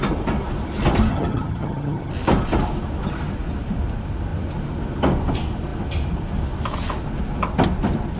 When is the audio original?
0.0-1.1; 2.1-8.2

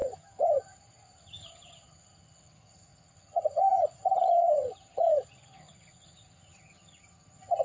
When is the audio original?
none